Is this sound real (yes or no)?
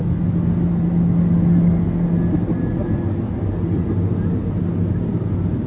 yes